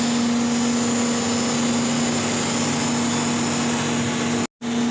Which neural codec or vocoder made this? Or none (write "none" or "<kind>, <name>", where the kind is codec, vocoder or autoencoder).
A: none